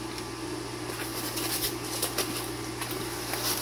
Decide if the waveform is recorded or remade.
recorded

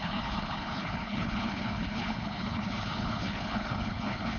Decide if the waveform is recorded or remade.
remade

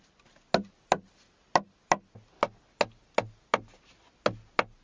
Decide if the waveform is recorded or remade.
recorded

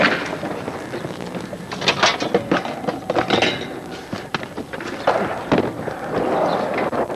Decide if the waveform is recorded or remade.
recorded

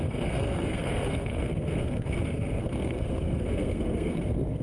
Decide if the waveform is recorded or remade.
remade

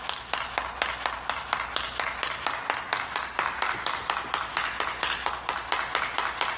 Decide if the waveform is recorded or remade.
recorded